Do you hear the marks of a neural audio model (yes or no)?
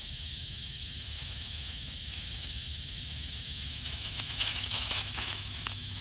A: yes